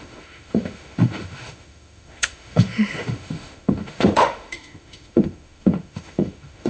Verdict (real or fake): fake